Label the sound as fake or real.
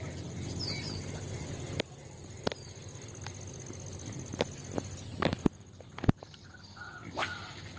real